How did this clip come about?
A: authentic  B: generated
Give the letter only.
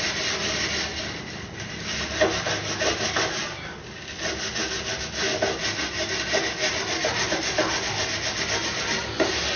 A